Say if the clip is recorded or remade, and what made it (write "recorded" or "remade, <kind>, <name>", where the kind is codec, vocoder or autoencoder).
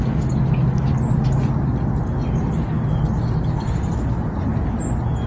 recorded